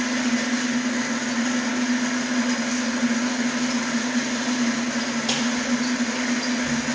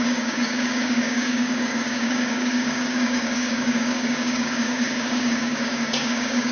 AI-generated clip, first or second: second